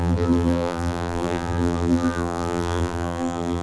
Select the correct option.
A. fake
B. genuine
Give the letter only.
A